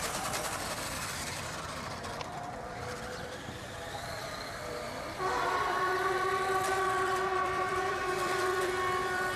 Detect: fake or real fake